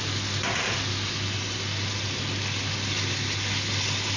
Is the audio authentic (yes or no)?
yes